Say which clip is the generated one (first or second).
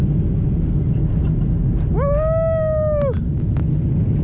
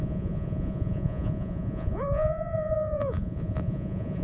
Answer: second